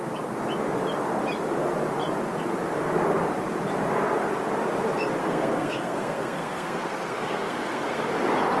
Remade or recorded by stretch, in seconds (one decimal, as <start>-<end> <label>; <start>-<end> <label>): 0.0-5.2 recorded; 5.2-8.0 remade; 8.0-8.6 recorded